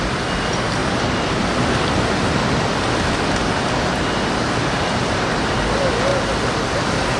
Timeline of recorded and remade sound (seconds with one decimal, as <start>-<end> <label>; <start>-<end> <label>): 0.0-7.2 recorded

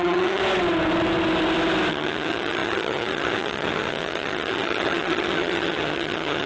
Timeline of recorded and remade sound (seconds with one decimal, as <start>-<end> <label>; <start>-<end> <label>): 0.0-0.4 remade; 0.4-1.9 recorded; 1.9-6.5 remade

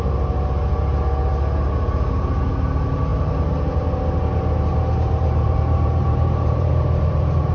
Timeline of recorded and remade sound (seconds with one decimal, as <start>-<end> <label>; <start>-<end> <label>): 0.0-4.7 recorded; 4.7-6.7 remade; 6.7-7.5 recorded